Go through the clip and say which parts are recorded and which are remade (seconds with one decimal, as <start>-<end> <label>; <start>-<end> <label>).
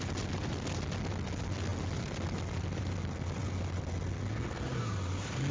0.0-5.5 recorded